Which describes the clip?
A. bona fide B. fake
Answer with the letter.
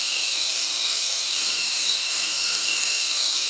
B